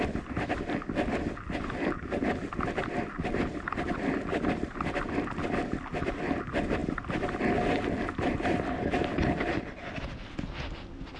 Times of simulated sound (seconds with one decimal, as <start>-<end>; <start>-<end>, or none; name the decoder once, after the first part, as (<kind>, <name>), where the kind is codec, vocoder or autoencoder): none